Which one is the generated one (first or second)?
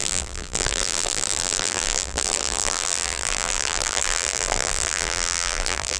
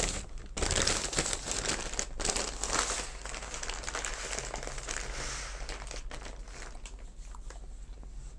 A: first